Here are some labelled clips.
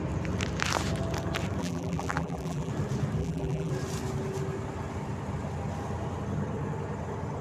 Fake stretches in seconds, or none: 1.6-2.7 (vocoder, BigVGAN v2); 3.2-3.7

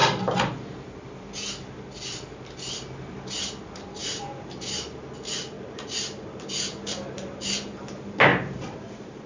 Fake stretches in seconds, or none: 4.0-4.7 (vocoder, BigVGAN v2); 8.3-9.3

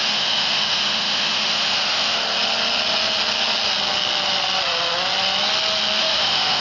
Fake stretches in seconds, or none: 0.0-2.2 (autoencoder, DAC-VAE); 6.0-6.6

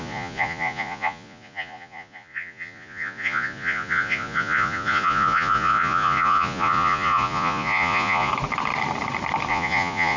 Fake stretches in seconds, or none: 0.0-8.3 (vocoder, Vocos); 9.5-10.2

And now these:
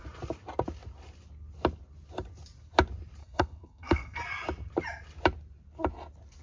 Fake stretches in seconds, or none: 3.2-4.2 (codec, SNAC)

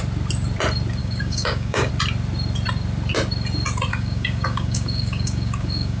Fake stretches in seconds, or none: 1.0-1.9 (codec, DAC); 3.9-6.0